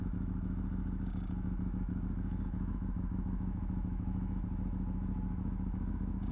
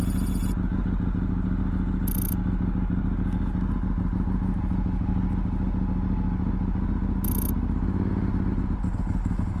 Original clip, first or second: second